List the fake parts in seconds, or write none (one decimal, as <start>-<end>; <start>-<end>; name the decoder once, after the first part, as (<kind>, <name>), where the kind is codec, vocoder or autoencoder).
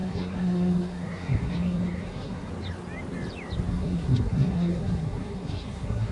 0.0-2.5 (codec, SNAC); 3.7-6.1